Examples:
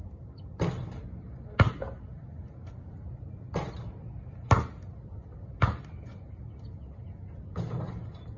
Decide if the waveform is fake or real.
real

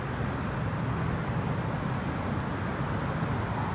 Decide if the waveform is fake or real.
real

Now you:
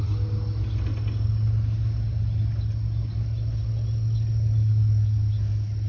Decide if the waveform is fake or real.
real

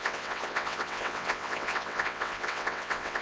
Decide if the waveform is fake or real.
fake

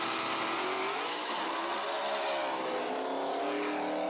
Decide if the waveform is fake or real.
real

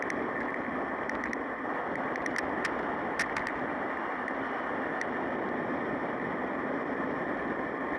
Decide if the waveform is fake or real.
real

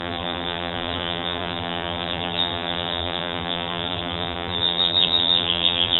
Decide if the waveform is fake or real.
fake